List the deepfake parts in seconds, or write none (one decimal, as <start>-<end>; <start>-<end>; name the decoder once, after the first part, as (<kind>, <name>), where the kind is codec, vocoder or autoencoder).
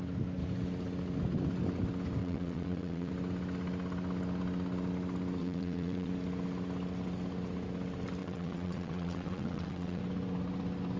2.2-3.1 (vocoder, WaveNeXt); 5.4-6.1; 8.2-10.0